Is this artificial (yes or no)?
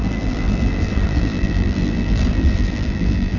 yes